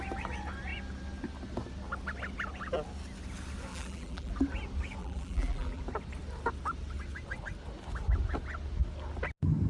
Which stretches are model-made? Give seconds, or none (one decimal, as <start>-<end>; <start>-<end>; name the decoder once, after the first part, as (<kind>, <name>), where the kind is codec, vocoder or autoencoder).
3.7-4.3 (vocoder, BigVGAN v2); 5.0-5.8